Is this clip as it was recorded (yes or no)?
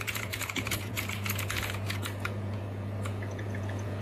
no